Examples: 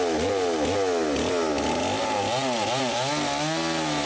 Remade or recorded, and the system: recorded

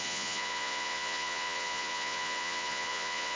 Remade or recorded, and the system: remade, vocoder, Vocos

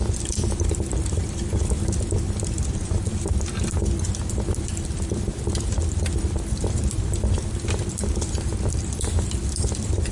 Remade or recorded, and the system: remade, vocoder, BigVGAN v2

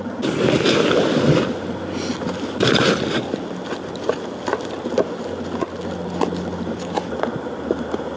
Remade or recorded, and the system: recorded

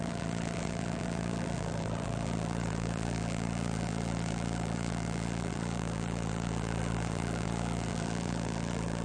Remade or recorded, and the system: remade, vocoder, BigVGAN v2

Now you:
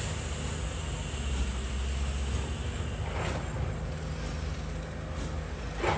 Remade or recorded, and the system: recorded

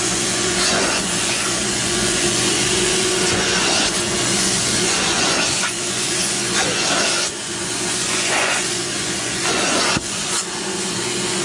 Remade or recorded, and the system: remade, vocoder, Vocos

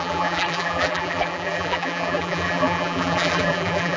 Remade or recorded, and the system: remade, vocoder, BigVGAN v2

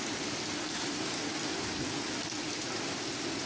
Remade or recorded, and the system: recorded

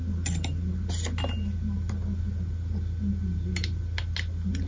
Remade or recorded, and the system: recorded